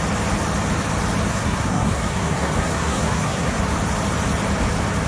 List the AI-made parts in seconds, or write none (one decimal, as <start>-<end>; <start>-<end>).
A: 1.3-3.6